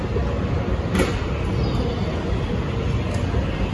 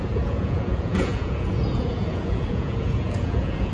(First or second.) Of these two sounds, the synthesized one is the second